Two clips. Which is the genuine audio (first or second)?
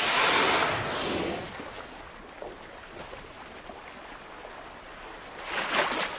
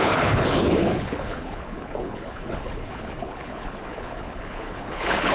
first